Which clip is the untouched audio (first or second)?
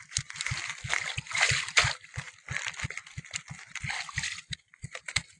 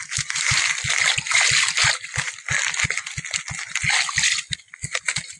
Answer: second